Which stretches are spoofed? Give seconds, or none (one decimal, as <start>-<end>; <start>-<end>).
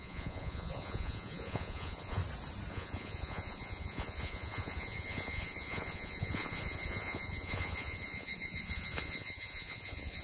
0.0-2.2; 2.7-10.2